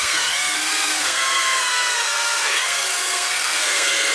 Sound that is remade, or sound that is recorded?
remade